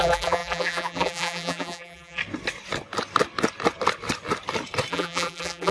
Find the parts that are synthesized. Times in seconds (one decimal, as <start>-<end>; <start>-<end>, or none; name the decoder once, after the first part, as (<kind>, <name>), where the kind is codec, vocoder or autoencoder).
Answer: 0.0-2.2 (vocoder, BigVGAN v2); 4.9-5.7